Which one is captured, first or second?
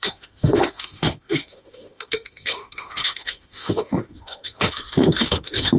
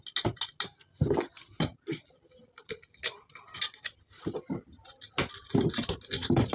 second